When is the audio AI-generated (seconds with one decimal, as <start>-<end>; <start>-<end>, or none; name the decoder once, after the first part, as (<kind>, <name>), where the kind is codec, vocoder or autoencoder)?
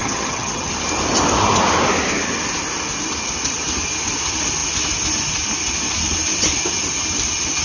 0.0-0.7 (vocoder, HiFi-GAN)